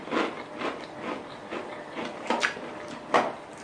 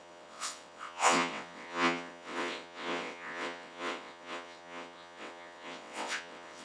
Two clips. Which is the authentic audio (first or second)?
first